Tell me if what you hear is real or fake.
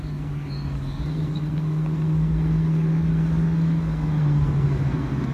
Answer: fake